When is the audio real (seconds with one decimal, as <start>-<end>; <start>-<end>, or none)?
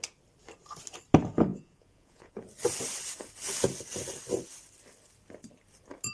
0.0-1.5; 2.4-6.1